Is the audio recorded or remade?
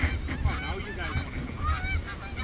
recorded